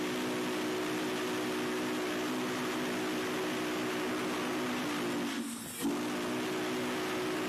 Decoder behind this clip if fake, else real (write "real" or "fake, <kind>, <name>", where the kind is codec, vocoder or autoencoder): real